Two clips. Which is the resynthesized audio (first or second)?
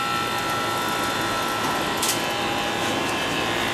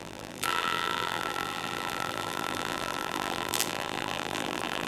second